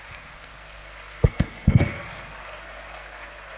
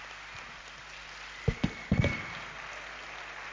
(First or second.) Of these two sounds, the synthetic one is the first